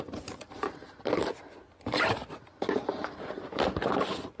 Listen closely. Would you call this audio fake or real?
fake